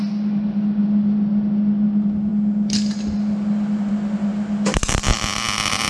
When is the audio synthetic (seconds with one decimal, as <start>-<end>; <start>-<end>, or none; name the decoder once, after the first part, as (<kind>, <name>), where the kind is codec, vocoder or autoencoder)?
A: none